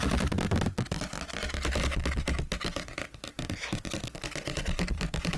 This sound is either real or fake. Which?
real